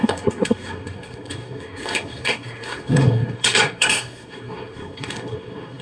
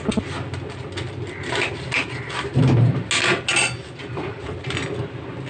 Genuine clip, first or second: second